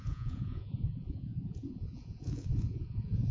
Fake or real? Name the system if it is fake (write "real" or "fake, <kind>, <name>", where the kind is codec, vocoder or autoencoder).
fake, vocoder, Vocos